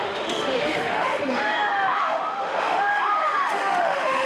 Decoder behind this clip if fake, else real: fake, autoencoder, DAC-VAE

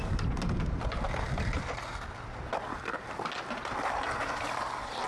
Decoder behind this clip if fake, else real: real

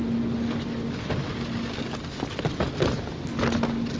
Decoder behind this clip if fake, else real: real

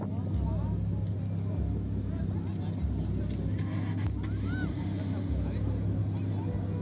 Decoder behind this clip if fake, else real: real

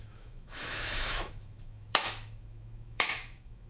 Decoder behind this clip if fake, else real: fake, autoencoder, DAC-VAE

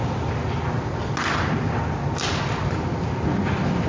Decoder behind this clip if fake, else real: real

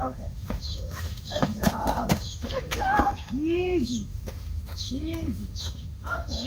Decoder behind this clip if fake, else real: fake, autoencoder, DAC-VAE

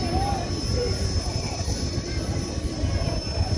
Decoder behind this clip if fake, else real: real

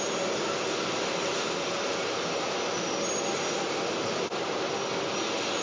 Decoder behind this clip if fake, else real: real